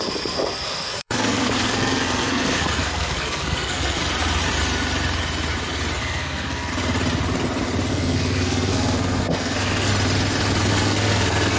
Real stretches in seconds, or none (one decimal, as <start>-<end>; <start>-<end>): 4.0-6.0; 6.7-7.9; 9.9-10.7